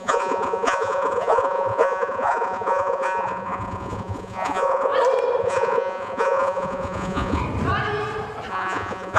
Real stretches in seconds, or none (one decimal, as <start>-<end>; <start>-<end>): 4.9-5.4; 7.4-8.5